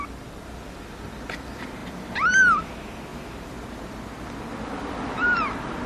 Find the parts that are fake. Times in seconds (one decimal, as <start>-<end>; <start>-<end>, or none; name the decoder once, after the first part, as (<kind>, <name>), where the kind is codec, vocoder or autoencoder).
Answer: 0.0-3.1 (vocoder, BigVGAN v2); 4.7-5.9